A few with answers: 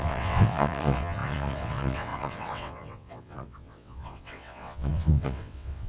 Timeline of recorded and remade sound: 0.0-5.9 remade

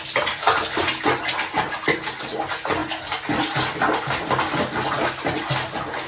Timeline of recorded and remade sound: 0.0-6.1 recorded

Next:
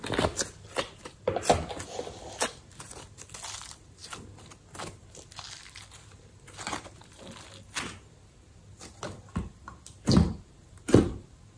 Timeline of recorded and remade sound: 0.0-11.6 recorded

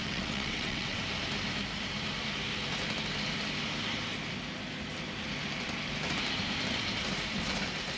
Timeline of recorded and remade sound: 0.0-1.0 remade; 1.0-8.0 recorded

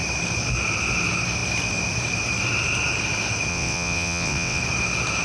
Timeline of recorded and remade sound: 0.0-3.5 recorded; 3.5-4.6 remade; 4.6-5.2 recorded

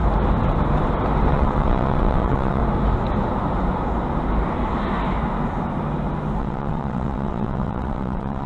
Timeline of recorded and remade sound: 0.0-1.3 recorded; 1.3-2.6 remade; 2.6-6.4 recorded; 6.4-8.5 remade

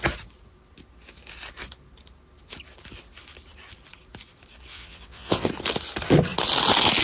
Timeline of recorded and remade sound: 0.0-4.7 recorded; 4.7-5.5 remade; 5.5-7.0 recorded